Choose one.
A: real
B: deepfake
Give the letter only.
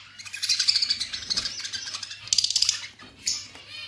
A